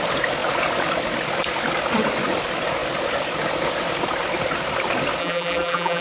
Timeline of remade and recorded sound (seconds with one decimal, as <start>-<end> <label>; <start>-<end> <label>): 0.0-5.2 recorded; 5.2-6.0 remade